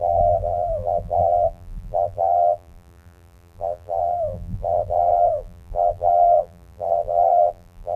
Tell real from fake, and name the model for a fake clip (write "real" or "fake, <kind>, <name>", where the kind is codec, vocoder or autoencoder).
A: fake, vocoder, BigVGAN v2